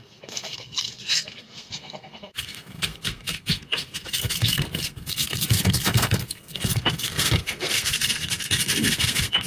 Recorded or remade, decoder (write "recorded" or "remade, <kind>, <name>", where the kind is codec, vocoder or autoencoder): remade, codec, SNAC